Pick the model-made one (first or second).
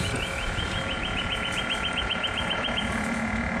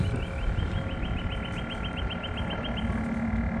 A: first